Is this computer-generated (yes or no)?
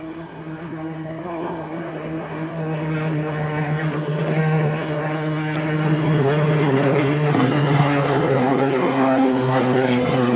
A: yes